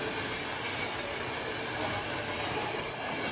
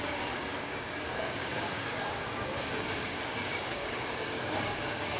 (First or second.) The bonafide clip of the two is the first